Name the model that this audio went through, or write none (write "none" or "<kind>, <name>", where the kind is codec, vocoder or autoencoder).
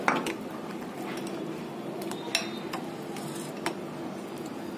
none